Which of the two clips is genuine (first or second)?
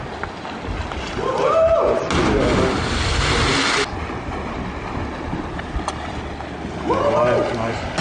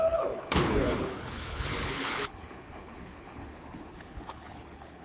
first